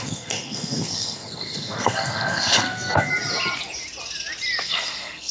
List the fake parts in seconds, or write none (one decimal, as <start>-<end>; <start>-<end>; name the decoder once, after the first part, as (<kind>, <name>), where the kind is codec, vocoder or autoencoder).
0.0-3.1 (codec, SNAC); 4.6-5.3